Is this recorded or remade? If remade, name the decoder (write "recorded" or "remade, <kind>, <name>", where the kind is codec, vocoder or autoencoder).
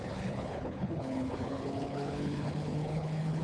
remade, codec, HILCodec